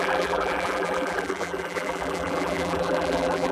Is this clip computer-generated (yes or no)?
yes